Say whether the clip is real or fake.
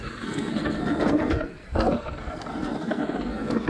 fake